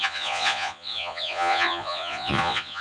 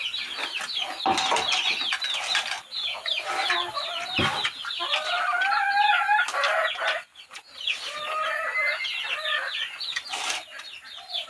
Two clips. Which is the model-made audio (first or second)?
first